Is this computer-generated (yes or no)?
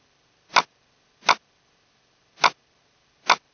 no